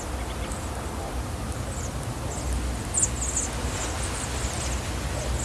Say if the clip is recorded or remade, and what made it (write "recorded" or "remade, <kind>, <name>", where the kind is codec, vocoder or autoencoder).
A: recorded